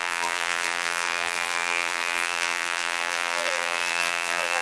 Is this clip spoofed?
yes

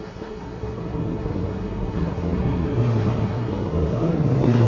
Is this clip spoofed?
yes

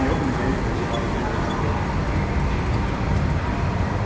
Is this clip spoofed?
no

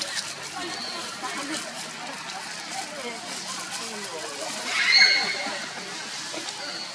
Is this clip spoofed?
no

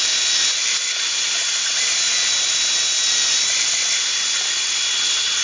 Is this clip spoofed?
no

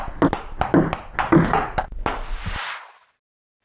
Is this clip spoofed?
no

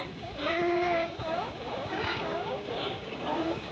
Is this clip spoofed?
yes